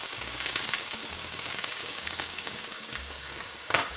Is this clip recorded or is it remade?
remade